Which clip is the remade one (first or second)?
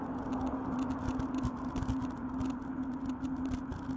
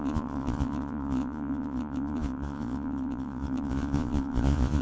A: second